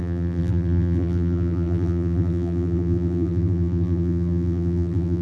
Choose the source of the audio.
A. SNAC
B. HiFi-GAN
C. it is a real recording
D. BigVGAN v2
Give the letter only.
D